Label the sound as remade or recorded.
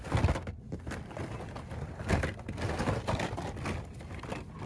recorded